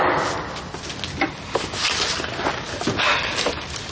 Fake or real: real